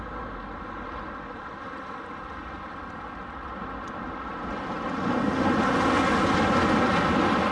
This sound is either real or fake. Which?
real